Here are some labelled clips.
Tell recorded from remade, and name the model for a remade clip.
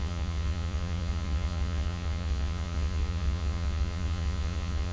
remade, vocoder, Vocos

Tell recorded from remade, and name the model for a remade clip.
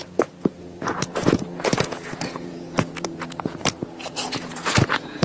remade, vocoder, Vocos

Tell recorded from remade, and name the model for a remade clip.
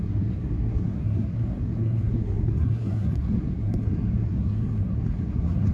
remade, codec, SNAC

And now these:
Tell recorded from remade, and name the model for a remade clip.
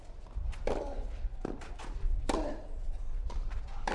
recorded